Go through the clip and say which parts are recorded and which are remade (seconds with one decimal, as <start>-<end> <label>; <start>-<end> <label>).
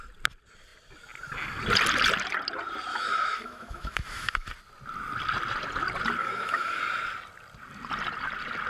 0.0-2.9 recorded; 2.9-4.5 remade; 4.5-6.2 recorded; 6.2-6.8 remade; 6.8-8.7 recorded